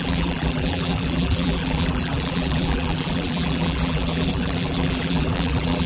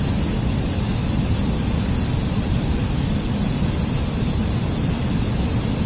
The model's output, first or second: first